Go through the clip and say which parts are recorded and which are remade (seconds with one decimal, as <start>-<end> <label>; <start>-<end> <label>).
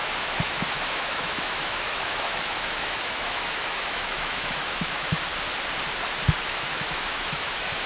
0.0-5.3 remade; 5.3-6.4 recorded; 6.4-7.9 remade